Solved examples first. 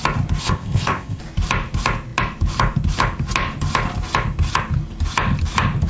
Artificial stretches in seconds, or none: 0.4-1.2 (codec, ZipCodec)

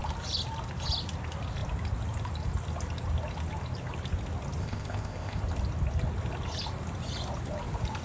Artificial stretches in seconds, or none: 4.6-5.4 (codec, ZipCodec)